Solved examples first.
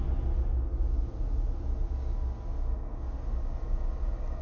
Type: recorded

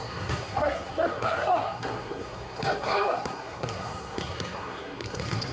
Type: remade